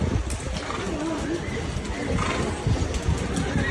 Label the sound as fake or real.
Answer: real